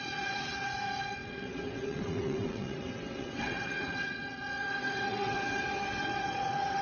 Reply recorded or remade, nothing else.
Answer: remade